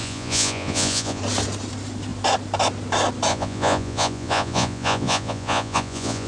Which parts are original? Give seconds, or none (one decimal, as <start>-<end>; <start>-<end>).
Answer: 1.2-3.3